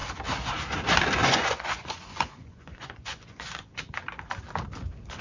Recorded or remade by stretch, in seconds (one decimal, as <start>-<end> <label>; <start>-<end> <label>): 0.0-1.2 recorded; 1.2-3.8 remade; 3.8-5.2 recorded